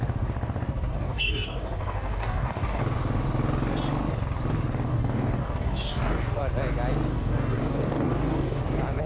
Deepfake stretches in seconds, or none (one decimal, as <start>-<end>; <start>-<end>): 0.9-2.8; 4.9-6.4; 7.1-8.6